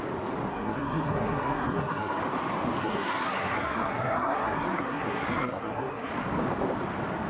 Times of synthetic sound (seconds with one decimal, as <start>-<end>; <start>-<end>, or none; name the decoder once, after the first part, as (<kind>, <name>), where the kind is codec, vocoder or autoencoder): 0.5-2.2 (codec, SNAC); 2.8-6.1